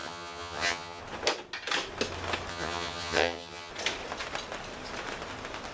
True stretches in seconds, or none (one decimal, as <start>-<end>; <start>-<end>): 1.0-2.5; 3.7-5.7